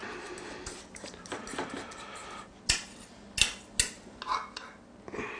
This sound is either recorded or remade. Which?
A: recorded